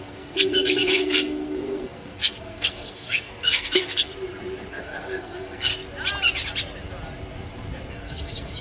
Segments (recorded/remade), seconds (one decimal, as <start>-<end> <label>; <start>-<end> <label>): 0.0-4.1 remade; 4.1-4.7 recorded; 4.7-5.7 remade; 5.7-7.9 recorded; 7.9-8.6 remade